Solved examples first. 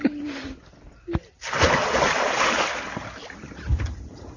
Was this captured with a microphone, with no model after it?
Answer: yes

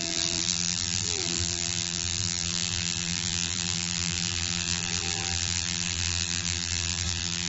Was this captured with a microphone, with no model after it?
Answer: no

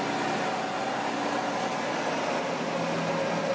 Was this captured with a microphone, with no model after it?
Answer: yes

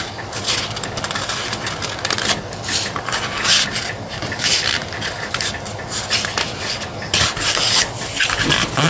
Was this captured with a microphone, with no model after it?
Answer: yes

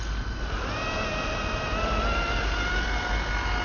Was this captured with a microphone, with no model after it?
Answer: yes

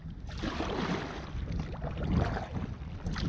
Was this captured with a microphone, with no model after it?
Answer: yes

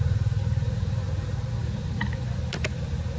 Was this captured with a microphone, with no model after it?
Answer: no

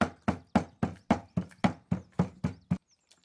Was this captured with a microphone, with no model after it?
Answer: yes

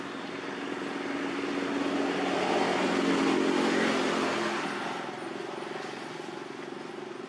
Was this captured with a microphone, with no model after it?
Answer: yes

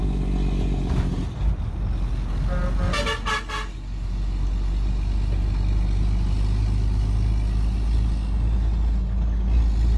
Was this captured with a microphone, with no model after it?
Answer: yes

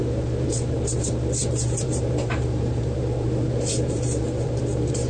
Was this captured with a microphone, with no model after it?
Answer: no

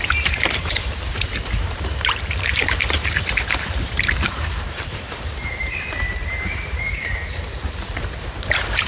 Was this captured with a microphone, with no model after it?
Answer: no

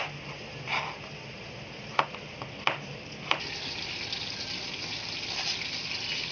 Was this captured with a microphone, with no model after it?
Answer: yes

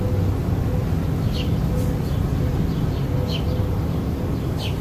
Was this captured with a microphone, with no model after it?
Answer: yes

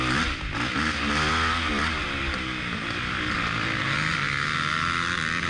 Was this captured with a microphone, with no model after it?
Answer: yes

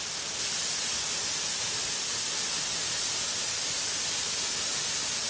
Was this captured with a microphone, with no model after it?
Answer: yes